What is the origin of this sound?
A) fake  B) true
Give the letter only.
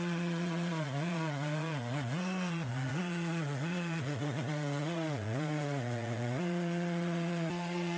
A